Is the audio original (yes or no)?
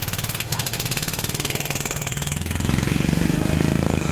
no